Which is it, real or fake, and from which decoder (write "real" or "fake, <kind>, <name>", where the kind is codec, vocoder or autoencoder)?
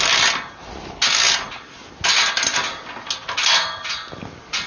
real